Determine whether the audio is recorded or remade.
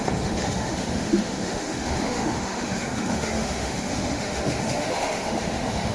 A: remade